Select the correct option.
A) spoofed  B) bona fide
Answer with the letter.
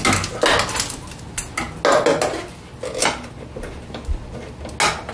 B